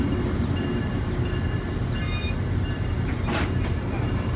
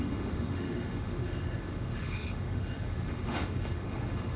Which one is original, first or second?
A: first